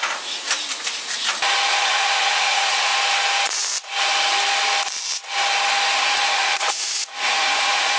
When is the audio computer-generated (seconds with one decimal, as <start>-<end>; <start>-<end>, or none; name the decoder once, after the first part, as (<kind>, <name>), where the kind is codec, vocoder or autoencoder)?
0.0-0.6 (vocoder, Vocos); 1.7-2.9; 6.0-8.0